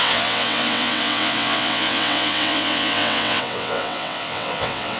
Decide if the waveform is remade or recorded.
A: remade